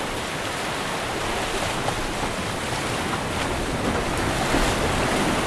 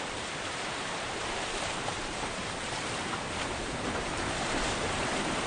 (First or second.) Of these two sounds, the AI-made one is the second